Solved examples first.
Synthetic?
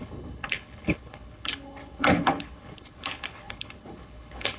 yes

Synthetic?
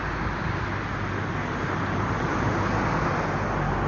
no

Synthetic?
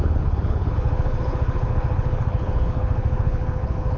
yes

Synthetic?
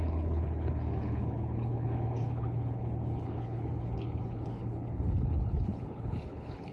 yes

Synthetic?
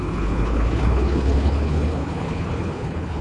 yes